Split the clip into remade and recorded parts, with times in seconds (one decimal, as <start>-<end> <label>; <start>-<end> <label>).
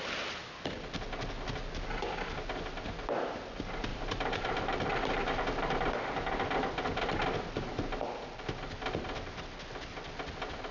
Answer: 0.0-3.9 recorded; 3.9-5.3 remade; 5.3-10.7 recorded